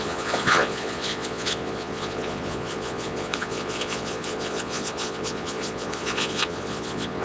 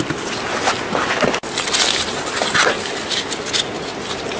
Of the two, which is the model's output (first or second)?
first